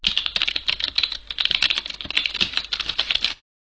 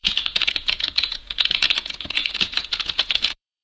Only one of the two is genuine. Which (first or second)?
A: first